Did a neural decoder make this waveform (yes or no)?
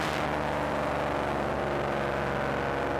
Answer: no